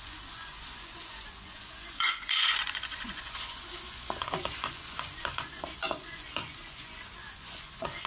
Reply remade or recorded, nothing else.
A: remade